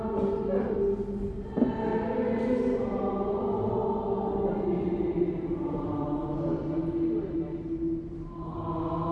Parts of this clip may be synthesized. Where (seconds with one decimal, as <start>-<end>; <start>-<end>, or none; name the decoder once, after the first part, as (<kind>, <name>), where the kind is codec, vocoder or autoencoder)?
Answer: none